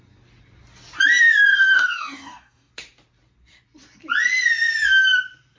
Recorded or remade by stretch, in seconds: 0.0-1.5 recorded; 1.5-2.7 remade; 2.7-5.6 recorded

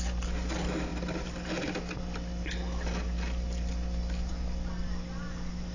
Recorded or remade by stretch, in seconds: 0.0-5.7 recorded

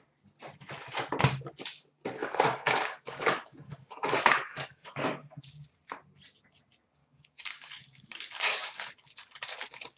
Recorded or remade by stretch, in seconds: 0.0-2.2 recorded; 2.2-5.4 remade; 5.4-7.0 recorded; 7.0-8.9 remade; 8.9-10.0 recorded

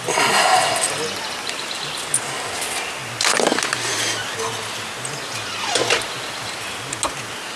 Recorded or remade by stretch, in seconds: 0.0-7.6 recorded